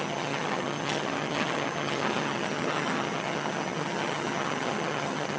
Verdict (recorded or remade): remade